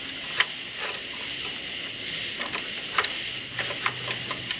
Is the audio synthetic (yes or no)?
no